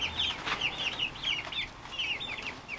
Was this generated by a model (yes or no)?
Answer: no